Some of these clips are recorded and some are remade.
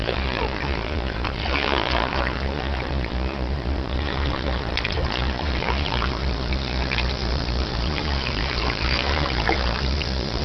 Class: remade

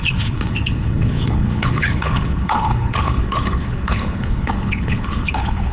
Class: remade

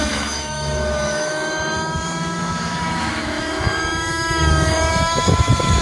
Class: remade